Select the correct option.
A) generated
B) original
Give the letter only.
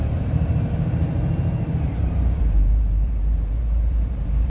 A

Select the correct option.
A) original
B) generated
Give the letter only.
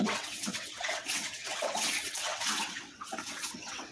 B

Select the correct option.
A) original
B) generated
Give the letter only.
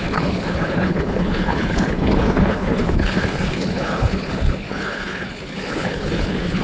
B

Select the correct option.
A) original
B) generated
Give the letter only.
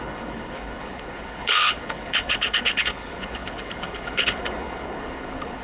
B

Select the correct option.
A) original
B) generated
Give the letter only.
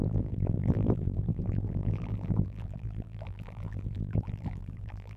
B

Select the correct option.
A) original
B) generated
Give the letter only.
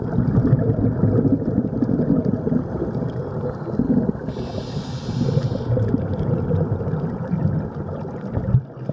A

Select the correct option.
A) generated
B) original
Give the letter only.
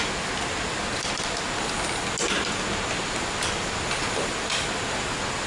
B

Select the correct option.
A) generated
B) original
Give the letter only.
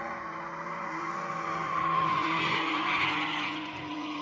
A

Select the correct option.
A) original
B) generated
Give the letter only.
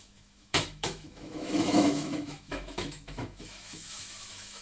B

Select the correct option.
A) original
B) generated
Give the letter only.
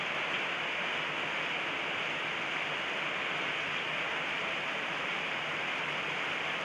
A